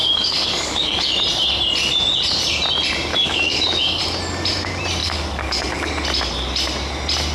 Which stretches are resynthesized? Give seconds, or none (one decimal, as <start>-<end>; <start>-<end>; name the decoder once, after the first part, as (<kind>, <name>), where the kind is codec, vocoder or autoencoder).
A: 0.0-1.1 (codec, DAC); 3.1-4.0; 5.0-5.9